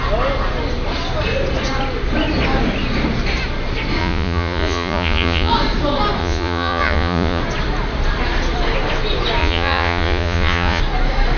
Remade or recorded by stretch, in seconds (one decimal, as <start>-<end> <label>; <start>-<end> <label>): 0.0-4.0 recorded; 4.0-5.5 remade; 5.5-6.2 recorded; 6.2-7.4 remade; 7.4-9.4 recorded; 9.4-10.8 remade; 10.8-11.4 recorded